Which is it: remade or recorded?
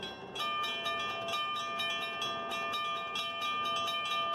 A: recorded